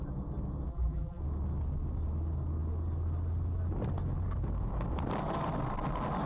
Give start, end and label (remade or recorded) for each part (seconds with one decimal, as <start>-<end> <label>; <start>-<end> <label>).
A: 0.0-0.7 recorded; 0.7-1.2 remade; 1.2-6.3 recorded